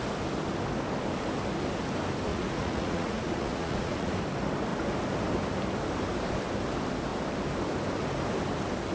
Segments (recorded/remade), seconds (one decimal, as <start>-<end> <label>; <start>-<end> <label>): 0.0-2.3 recorded; 2.3-4.1 remade; 4.1-8.9 recorded